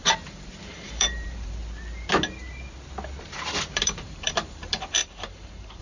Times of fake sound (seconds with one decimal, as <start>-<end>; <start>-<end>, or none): 0.0-1.6; 3.2-5.8